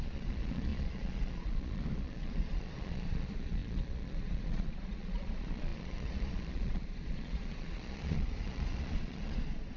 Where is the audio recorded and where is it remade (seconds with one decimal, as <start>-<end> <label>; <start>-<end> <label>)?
0.0-9.8 remade